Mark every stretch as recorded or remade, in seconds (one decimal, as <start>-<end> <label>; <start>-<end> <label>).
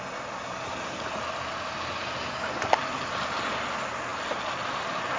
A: 0.0-5.2 recorded